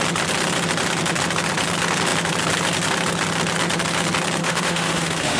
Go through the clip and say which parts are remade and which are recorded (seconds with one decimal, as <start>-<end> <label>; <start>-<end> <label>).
0.0-4.4 recorded; 4.4-5.4 remade